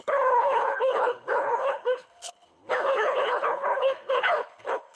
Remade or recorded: remade